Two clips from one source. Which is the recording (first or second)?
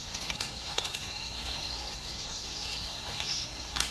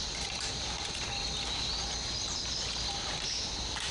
second